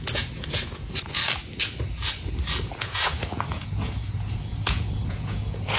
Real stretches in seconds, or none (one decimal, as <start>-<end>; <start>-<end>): 1.2-2.6